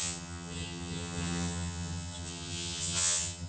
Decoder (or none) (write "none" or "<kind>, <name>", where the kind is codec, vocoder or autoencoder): vocoder, HiFi-GAN